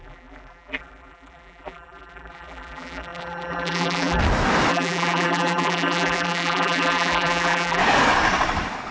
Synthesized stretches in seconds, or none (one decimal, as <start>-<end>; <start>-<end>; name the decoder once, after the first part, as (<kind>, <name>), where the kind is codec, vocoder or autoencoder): 0.0-4.2 (vocoder, BigVGAN v2); 4.7-7.8